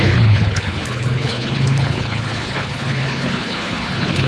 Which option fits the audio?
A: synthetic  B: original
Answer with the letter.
A